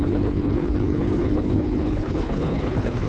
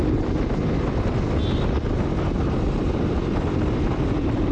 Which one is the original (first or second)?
second